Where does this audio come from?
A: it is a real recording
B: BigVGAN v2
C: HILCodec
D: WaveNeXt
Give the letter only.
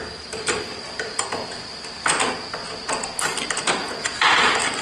A